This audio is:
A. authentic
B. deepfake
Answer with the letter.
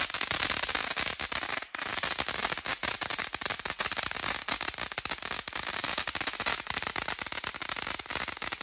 A